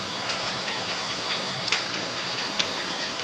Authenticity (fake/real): fake